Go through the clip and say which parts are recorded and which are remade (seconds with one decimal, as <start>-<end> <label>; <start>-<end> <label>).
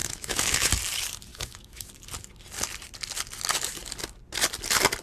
0.0-0.7 remade; 0.7-1.3 recorded; 1.3-1.9 remade; 1.9-5.0 recorded